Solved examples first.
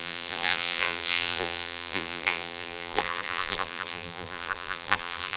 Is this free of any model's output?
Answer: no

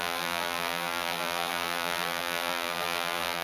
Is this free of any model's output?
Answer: no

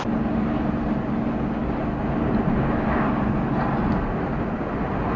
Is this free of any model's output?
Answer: yes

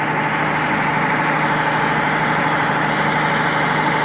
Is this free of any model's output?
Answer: yes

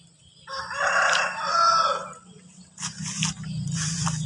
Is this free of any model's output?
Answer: yes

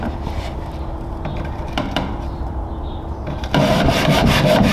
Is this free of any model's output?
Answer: no